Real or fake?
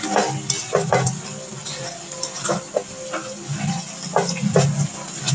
real